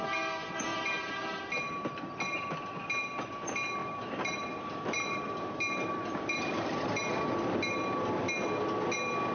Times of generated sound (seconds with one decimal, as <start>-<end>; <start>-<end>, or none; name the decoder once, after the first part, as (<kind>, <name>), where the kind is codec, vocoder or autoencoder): 0.7-1.4 (vocoder, BigVGAN v2); 3.8-7.2